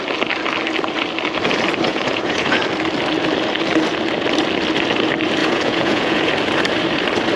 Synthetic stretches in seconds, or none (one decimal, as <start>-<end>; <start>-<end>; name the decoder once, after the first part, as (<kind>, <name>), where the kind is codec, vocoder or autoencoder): 1.9-2.6 (vocoder, Vocos); 5.4-6.3